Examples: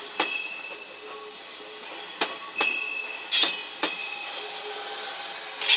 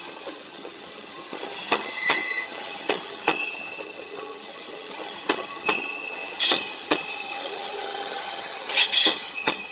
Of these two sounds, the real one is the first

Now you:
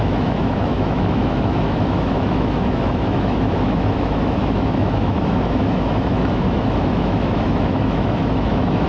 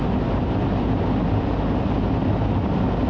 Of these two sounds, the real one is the second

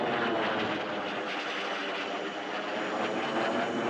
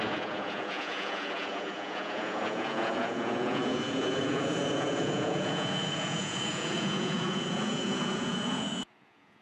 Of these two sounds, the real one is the first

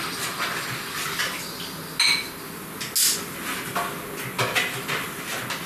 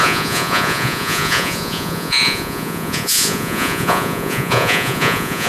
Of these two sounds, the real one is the first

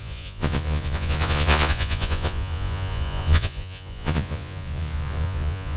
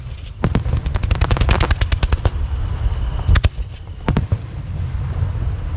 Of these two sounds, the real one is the second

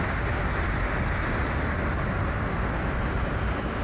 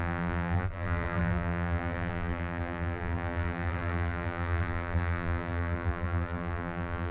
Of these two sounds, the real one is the first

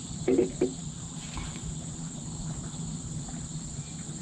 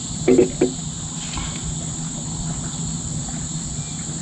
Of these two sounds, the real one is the second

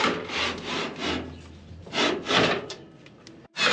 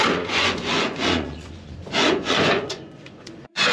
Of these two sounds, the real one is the first